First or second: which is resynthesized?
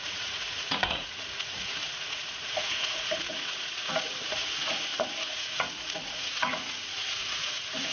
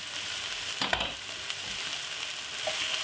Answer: first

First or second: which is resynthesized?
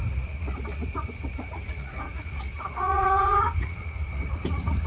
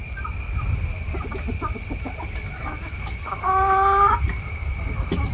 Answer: first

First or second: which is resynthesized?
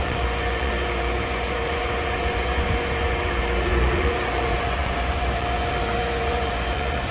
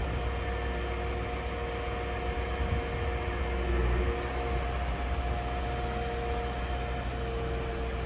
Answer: first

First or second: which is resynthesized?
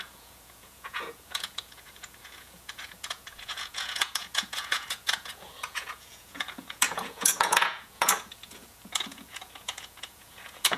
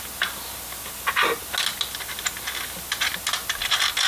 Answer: first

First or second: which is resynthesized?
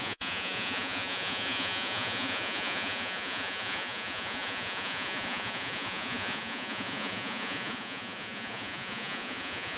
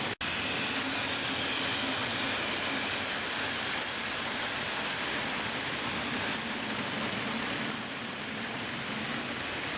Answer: first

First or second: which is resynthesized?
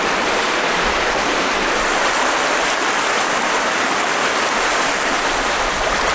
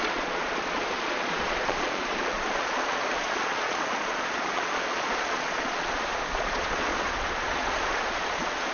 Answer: second